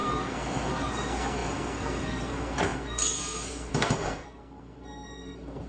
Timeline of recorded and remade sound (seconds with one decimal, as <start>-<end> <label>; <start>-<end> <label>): 0.0-5.7 remade